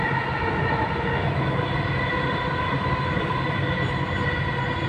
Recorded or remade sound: recorded